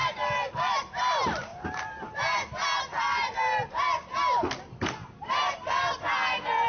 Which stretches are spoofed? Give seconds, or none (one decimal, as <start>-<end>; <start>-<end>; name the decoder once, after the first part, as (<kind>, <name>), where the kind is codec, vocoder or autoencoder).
none